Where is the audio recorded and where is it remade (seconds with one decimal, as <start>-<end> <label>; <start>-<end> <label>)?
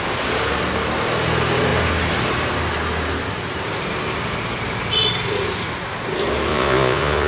0.0-6.5 recorded; 6.5-7.3 remade